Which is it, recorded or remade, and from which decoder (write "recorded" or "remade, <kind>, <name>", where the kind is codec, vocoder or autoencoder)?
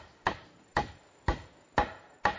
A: recorded